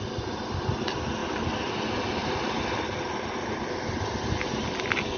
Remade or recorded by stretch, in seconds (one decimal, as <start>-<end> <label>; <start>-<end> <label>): 0.0-2.2 recorded; 2.2-4.0 remade; 4.0-5.2 recorded